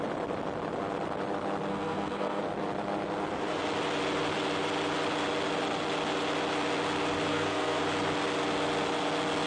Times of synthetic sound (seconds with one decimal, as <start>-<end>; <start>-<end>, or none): 1.7-2.4; 7.3-7.8